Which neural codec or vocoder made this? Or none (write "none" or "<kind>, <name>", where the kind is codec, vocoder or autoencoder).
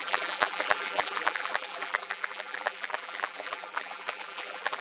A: vocoder, BigVGAN v2